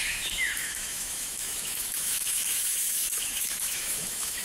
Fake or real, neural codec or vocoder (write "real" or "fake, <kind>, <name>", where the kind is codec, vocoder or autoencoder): fake, autoencoder, DAC-VAE